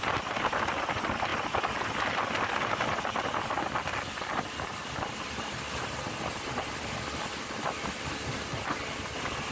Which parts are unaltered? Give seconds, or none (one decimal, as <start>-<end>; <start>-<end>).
0.0-9.5